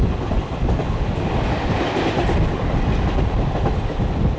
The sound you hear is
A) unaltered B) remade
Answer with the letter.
A